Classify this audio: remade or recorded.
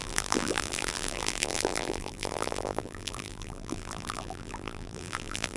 remade